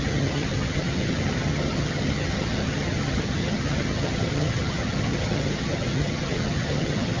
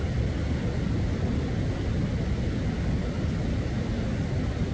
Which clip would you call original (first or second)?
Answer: second